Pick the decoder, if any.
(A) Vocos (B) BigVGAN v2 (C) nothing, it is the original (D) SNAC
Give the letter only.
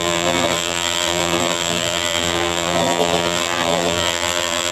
B